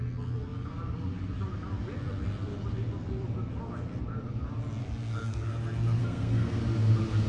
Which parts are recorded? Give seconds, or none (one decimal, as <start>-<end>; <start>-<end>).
0.0-4.8; 5.5-6.0; 6.6-7.3